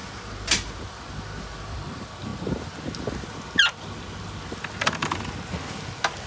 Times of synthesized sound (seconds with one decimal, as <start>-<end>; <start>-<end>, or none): none

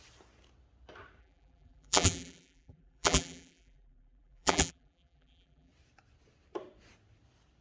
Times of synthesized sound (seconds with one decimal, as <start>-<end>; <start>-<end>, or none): 1.2-5.7

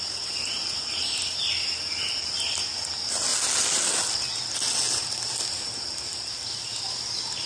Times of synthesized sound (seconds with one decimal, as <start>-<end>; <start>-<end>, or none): 3.3-6.3

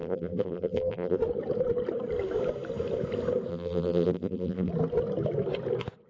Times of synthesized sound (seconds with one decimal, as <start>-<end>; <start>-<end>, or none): 0.0-1.2; 3.5-4.7

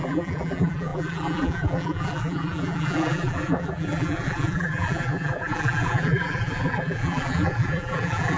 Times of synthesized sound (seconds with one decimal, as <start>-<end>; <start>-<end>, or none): 0.0-8.4

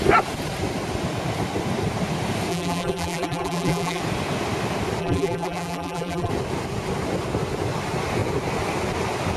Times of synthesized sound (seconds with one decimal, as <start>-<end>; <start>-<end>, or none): 2.5-4.0; 5.0-6.3

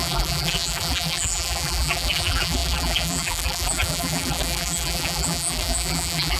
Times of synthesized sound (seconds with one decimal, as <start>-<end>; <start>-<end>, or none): 0.0-6.4